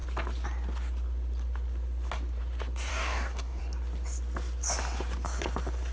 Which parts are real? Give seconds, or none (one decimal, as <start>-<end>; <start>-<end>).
0.0-2.9; 3.6-5.9